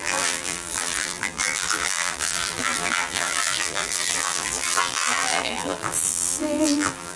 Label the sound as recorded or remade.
remade